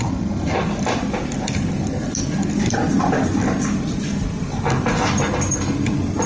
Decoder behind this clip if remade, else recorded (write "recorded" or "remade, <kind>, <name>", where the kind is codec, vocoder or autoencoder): recorded